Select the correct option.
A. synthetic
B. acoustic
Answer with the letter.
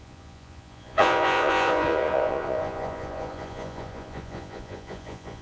A